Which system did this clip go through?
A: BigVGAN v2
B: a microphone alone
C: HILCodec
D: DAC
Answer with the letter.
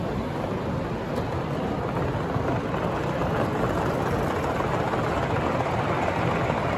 B